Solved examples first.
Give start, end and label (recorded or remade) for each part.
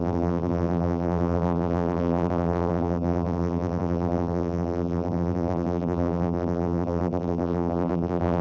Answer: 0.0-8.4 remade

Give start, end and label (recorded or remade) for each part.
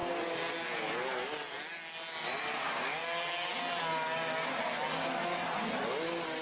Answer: 0.0-6.4 recorded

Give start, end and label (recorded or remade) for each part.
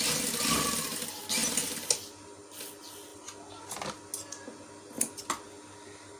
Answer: 0.0-6.2 recorded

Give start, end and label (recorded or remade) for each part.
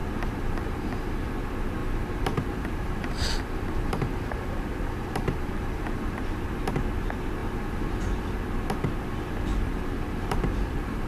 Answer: 0.0-1.2 remade; 1.2-1.8 recorded; 1.8-6.5 remade; 6.5-9.5 recorded; 9.5-11.1 remade